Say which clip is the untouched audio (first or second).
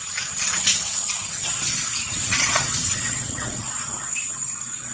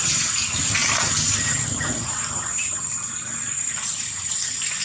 second